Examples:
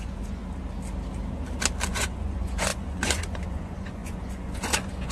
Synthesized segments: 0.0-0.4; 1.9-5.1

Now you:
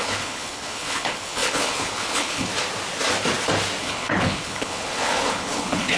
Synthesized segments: 0.0-2.5; 3.8-6.0

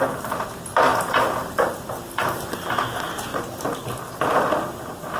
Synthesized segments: 0.9-2.0; 3.3-4.8